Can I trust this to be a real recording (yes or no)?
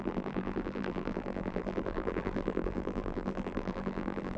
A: no